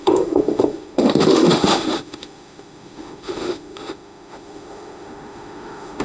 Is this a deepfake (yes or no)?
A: yes